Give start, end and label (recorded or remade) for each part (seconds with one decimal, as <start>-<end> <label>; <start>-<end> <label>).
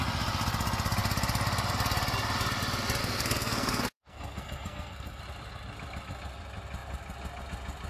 0.0-3.0 recorded; 3.0-5.2 remade; 5.2-7.9 recorded